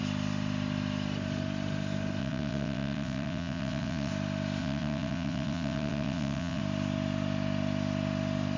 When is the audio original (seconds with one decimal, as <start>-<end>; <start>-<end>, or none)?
0.0-2.2; 4.1-4.6; 6.6-8.6